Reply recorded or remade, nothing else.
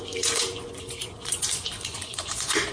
remade